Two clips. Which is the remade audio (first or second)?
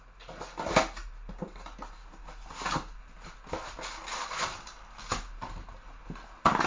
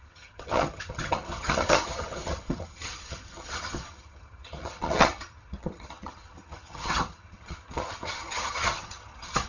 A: second